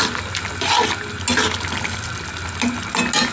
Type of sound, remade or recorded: recorded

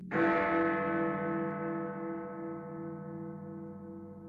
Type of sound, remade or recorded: recorded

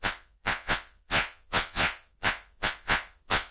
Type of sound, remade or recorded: remade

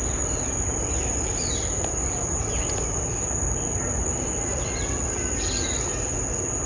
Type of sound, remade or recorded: recorded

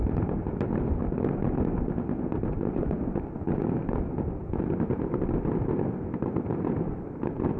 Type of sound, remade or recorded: recorded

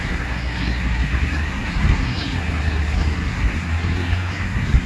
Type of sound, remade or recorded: remade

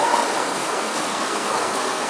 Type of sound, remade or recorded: remade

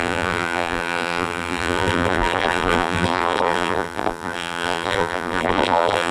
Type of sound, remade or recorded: remade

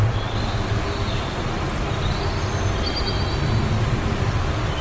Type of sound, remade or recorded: recorded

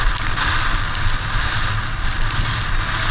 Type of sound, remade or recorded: recorded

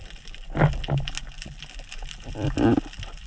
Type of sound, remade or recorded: recorded